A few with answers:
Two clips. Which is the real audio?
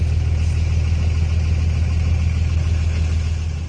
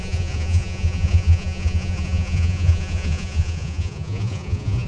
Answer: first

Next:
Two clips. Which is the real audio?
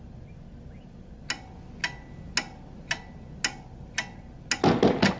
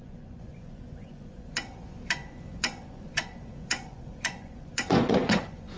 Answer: first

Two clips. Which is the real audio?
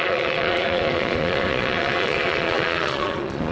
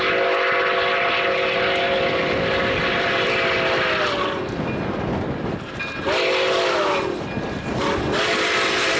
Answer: second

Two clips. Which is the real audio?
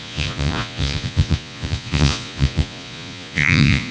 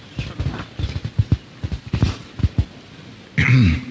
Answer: second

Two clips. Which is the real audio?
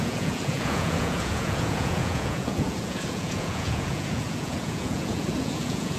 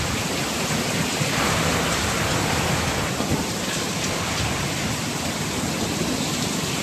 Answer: second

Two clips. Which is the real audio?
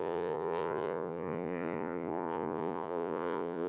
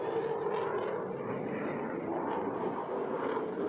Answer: second